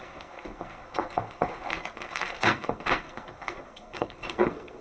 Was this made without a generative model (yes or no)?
no